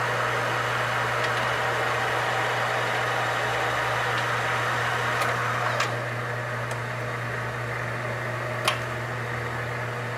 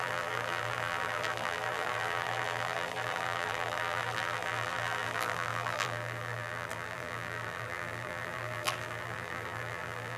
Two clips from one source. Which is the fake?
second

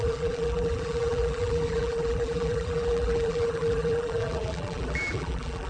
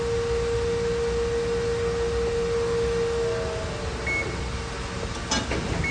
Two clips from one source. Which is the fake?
first